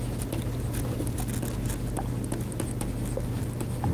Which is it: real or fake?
real